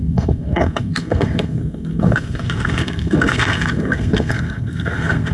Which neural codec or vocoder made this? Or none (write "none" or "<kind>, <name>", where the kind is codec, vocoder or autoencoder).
codec, SNAC